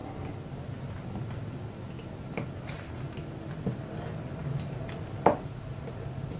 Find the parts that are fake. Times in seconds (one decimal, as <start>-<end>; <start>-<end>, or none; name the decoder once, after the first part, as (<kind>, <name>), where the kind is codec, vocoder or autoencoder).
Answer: 1.5-6.4 (vocoder, BigVGAN v2)